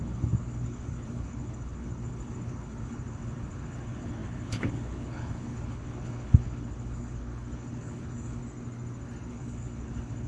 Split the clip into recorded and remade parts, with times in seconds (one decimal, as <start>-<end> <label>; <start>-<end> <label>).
0.0-8.4 remade; 8.4-9.3 recorded; 9.3-10.3 remade